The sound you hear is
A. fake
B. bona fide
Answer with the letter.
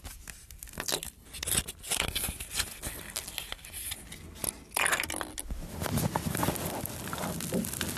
B